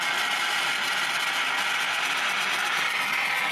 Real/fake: real